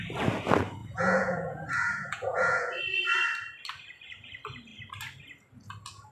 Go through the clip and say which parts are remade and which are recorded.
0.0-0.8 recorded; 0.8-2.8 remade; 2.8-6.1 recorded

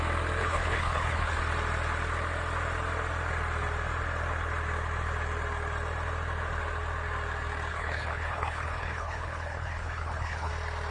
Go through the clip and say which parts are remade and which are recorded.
0.0-0.4 recorded; 0.4-1.4 remade; 1.4-7.7 recorded; 7.7-10.5 remade; 10.5-10.9 recorded

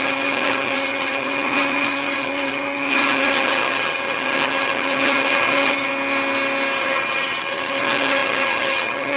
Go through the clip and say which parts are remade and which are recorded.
0.0-5.9 remade; 5.9-6.8 recorded; 6.8-9.2 remade

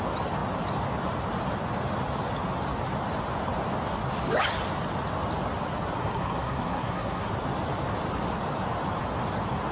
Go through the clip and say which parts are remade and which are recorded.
0.0-6.0 recorded; 6.0-7.3 remade; 7.3-9.7 recorded

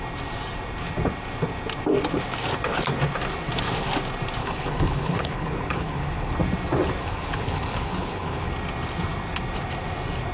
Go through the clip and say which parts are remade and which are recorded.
0.0-4.4 recorded; 4.4-6.3 remade; 6.3-7.0 recorded; 7.0-8.5 remade; 8.5-10.3 recorded

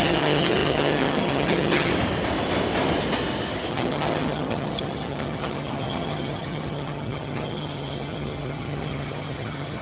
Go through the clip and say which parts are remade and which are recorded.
0.0-1.9 remade; 1.9-3.7 recorded; 3.7-9.8 remade

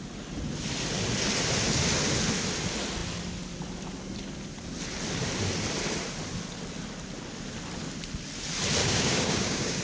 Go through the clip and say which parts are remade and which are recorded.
0.0-8.8 recorded; 8.8-9.8 remade

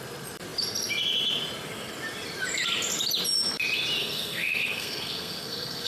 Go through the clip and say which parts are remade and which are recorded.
0.0-4.0 recorded; 4.0-5.9 remade